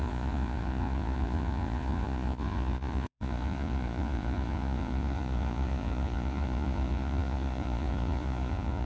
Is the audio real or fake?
fake